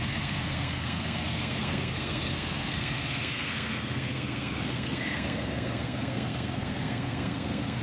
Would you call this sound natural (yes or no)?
no